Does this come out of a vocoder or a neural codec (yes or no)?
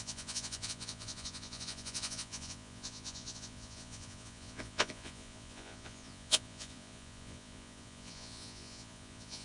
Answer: yes